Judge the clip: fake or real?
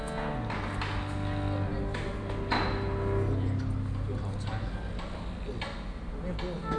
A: real